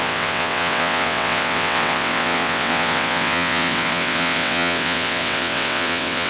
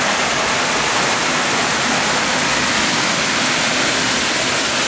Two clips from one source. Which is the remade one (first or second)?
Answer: first